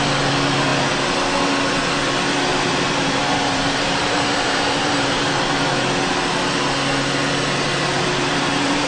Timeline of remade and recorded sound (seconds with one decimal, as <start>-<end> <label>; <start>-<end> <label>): 0.0-2.5 recorded; 2.5-6.0 remade; 6.0-7.8 recorded; 7.8-8.9 remade